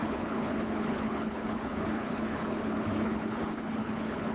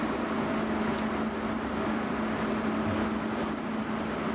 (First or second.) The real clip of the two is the second